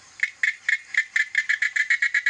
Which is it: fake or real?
real